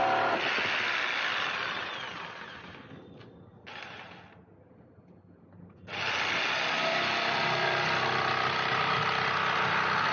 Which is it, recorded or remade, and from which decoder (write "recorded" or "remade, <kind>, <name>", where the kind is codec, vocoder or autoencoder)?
recorded